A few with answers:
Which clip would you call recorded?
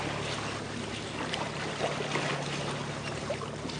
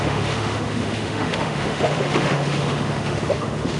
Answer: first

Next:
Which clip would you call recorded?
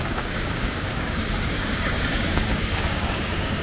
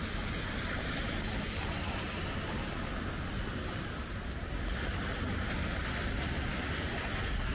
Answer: second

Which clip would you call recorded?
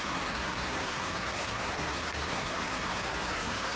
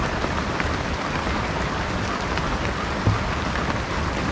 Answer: second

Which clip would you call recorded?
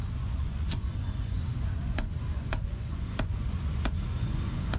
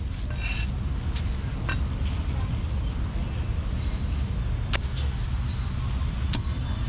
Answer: second